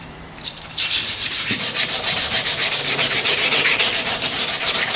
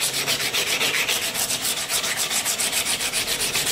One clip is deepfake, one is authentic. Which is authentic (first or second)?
second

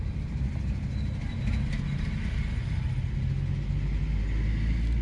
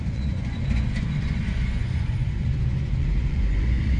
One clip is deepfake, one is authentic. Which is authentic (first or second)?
first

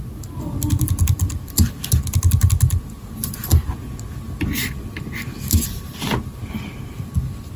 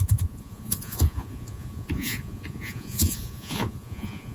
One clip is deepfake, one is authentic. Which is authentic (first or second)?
first